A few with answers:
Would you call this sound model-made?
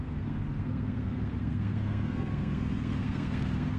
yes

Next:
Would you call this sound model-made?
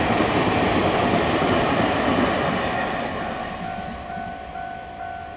no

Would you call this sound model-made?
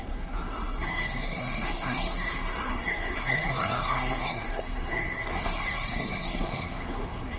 yes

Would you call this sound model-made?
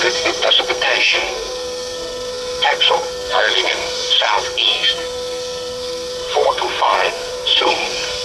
yes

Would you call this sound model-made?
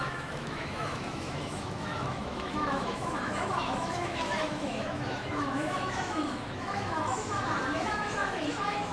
yes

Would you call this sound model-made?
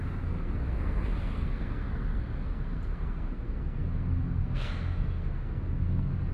yes